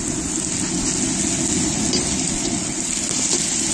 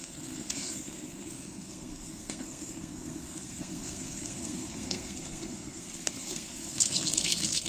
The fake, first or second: second